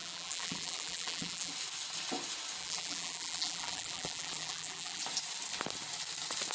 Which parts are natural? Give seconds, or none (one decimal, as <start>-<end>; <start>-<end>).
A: 1.5-2.6; 5.0-6.5